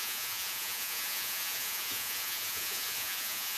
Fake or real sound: fake